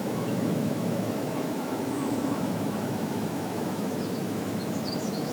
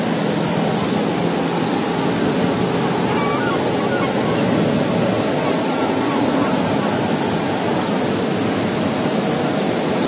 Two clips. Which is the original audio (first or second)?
second